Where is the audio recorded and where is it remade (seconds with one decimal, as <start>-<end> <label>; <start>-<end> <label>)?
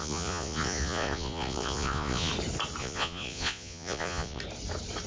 0.0-2.3 remade; 2.3-2.8 recorded; 2.8-4.4 remade; 4.4-5.1 recorded